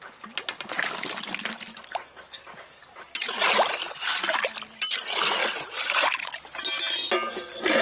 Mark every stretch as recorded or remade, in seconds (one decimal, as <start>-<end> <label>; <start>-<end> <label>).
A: 0.0-7.8 recorded